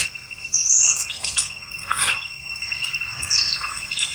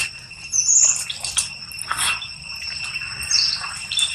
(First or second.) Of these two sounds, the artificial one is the first